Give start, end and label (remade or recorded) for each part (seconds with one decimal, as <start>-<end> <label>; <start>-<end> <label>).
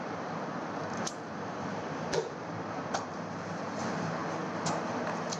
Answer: 0.0-4.2 remade; 4.2-5.4 recorded